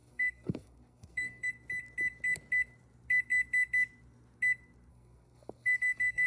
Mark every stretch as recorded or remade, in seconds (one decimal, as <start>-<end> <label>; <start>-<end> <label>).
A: 0.0-1.5 remade; 1.5-4.9 recorded; 4.9-6.3 remade